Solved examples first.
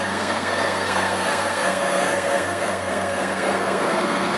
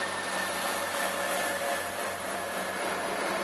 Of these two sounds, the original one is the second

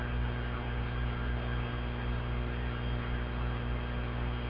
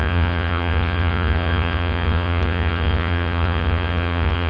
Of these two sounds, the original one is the first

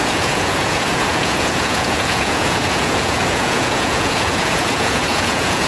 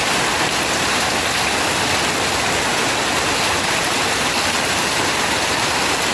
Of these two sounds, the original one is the second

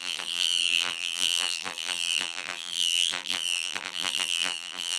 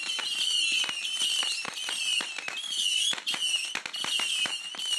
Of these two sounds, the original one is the second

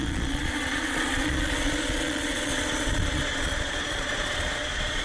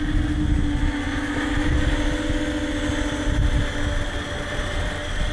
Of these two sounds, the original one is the second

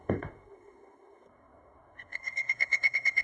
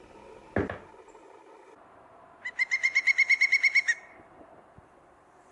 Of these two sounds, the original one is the second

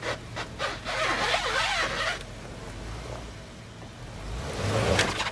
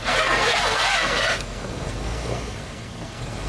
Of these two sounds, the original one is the first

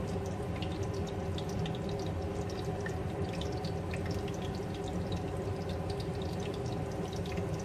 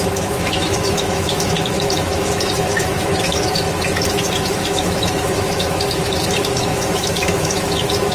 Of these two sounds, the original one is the first